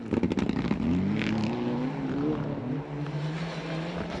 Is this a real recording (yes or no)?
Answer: yes